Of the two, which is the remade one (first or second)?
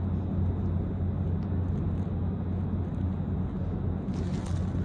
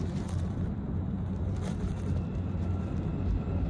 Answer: second